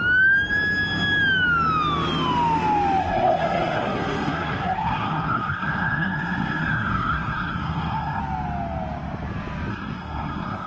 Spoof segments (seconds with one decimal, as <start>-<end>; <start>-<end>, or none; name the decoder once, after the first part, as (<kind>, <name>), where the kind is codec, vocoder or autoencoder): 3.0-8.2 (codec, SNAC); 9.7-10.7